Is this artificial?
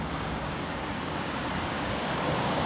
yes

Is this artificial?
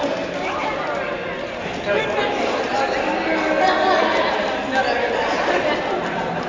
no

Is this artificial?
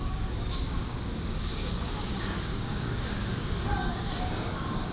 yes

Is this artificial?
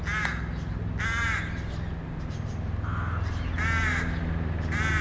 no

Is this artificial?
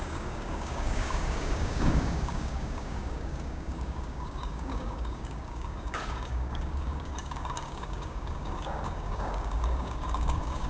yes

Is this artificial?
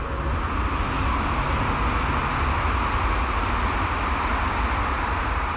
no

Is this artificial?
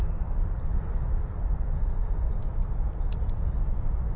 no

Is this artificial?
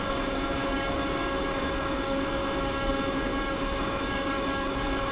yes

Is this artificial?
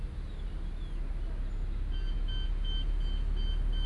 no